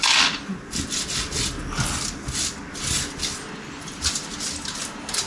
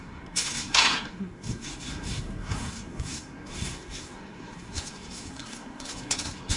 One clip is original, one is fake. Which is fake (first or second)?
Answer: second